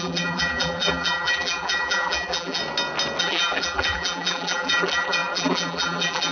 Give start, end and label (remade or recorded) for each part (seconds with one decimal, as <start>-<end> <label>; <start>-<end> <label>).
0.0-2.6 remade; 2.6-3.2 recorded; 3.2-6.3 remade